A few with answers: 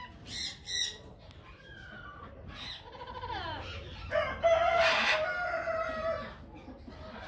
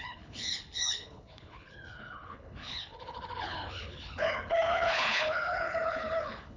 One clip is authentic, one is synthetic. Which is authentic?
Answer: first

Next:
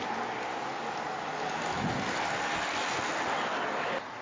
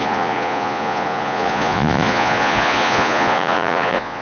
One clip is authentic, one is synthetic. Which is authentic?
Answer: first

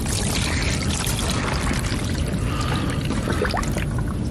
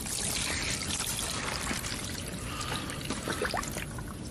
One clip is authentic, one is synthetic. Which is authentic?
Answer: first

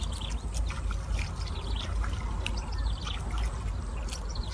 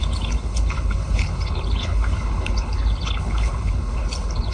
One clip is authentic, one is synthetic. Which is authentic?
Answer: first